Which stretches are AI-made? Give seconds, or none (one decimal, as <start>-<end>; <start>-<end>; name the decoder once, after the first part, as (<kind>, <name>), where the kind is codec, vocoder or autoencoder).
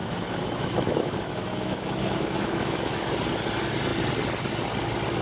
0.0-3.1 (autoencoder, DAC-VAE)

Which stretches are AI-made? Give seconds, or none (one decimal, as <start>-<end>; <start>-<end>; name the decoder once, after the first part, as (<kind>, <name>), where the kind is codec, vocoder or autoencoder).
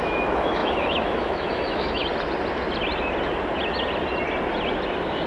0.0-2.0 (autoencoder, DAC-VAE)